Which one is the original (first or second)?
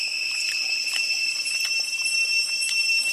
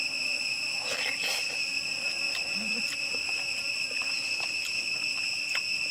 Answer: first